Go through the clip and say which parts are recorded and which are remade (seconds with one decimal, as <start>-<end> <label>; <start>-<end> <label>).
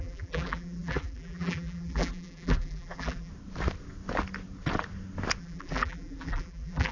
0.0-3.3 remade; 3.3-5.4 recorded; 5.4-6.9 remade